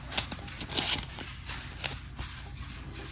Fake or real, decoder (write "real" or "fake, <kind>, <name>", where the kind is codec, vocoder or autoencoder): real